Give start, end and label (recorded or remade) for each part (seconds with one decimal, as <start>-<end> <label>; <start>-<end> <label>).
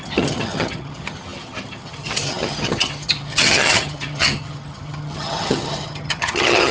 0.0-6.7 remade